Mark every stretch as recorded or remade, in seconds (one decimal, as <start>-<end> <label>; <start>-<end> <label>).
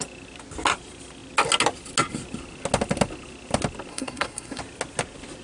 0.0-3.9 recorded; 3.9-4.6 remade; 4.6-5.4 recorded